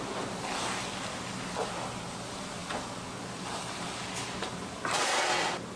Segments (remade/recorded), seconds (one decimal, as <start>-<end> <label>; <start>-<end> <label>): 0.0-5.8 recorded